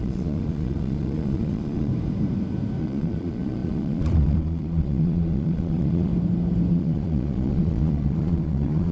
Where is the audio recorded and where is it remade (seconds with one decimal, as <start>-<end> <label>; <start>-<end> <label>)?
0.0-1.9 remade; 1.9-2.8 recorded; 2.8-6.1 remade; 6.1-6.7 recorded; 6.7-8.9 remade